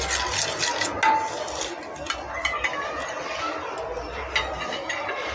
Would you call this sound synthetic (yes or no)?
no